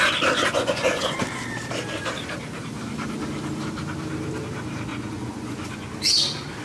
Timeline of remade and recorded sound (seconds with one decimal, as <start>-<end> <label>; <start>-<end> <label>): 0.0-0.5 recorded; 0.5-1.2 remade; 1.2-4.9 recorded; 4.9-5.9 remade; 5.9-6.6 recorded